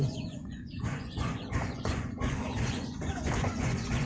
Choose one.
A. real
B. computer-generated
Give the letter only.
B